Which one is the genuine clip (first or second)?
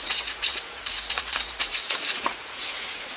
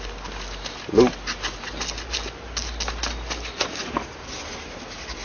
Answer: second